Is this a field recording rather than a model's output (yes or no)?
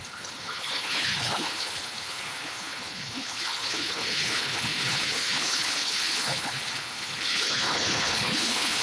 no